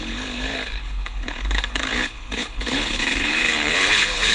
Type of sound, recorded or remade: remade